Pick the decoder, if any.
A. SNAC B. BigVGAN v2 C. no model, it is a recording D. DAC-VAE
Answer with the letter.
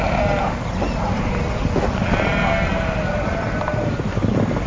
C